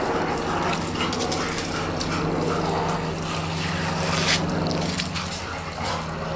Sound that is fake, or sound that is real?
real